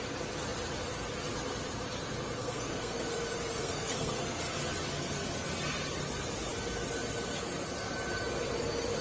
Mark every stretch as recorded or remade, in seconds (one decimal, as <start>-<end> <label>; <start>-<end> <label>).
0.0-2.4 recorded; 2.4-3.1 remade; 3.1-3.6 recorded; 3.6-4.5 remade; 4.5-9.0 recorded